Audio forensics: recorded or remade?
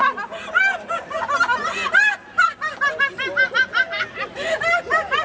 recorded